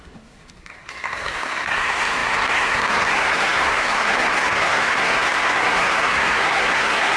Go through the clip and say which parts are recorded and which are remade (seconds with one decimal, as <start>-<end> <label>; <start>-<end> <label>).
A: 0.0-7.2 remade